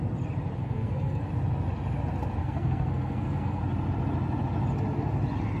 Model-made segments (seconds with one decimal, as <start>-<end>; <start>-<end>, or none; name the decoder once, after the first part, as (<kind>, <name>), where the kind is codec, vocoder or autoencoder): 0.6-1.3 (codec, SNAC); 2.4-3.6